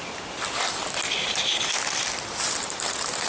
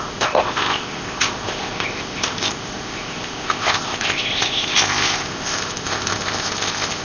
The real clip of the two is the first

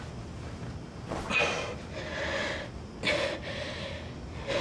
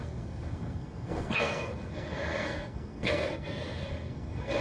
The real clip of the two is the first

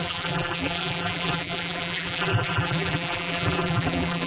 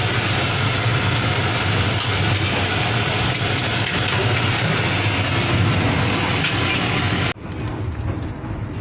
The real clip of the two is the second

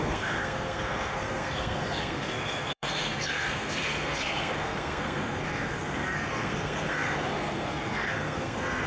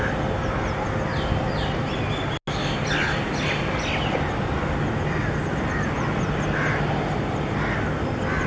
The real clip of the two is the second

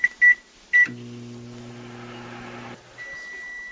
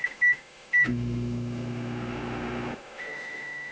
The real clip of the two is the first